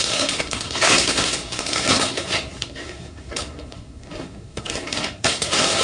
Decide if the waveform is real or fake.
fake